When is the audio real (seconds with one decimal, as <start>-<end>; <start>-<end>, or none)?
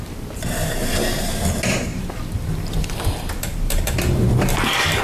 0.0-0.8; 1.5-1.9